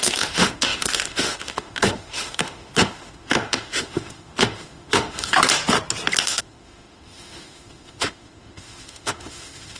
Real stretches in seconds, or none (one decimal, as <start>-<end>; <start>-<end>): 5.4-6.2